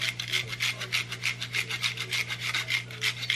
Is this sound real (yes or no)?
yes